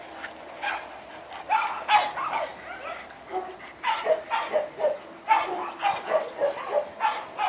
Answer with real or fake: real